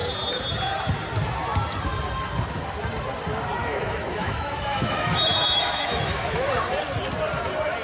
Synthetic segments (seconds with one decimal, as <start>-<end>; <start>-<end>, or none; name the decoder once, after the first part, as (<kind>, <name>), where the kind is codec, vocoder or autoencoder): 3.6-6.5 (autoencoder, DAC-VAE)